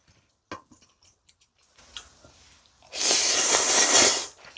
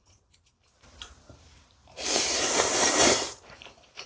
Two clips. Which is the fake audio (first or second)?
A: second